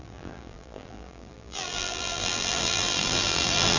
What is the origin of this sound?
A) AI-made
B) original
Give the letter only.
A